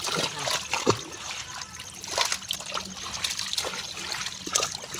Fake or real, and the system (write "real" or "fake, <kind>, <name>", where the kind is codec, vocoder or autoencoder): real